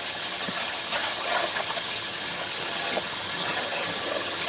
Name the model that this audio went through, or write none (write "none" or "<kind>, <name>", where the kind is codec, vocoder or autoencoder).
vocoder, HiFi-GAN